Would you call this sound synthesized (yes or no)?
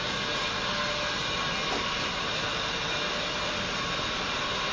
no